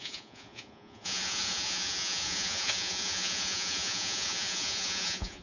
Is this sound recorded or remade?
remade